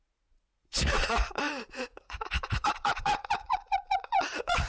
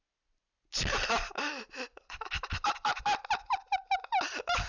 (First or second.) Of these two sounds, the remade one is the first